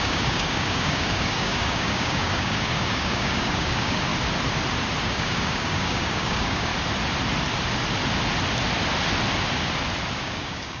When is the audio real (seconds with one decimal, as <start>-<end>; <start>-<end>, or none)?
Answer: 4.1-5.0; 6.7-10.2